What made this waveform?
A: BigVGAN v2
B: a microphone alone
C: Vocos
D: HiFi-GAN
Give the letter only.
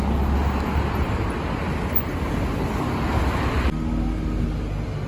B